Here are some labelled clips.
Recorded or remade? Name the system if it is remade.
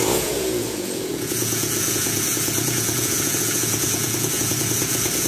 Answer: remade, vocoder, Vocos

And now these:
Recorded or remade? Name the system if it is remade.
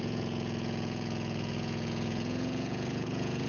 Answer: remade, vocoder, Vocos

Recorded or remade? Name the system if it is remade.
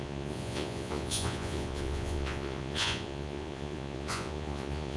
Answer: remade, vocoder, Vocos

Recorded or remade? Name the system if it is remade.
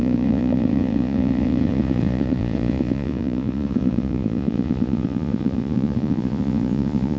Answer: remade, vocoder, Vocos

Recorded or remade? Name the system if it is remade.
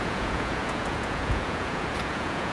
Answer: remade, vocoder, Vocos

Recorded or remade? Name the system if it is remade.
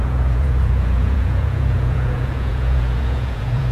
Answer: remade, vocoder, Vocos